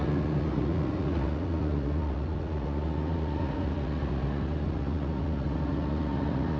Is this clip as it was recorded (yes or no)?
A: no